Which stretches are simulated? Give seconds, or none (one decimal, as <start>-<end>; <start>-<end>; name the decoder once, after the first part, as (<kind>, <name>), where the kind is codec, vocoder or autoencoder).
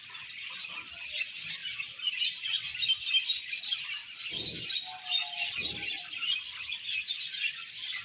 1.6-2.2 (vocoder, BigVGAN v2)